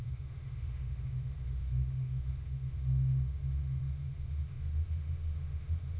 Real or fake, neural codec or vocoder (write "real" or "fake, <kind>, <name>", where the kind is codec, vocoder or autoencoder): fake, autoencoder, DAC-VAE